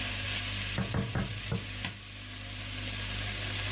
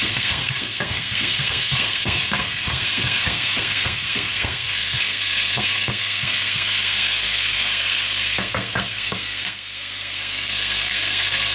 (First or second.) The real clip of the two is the first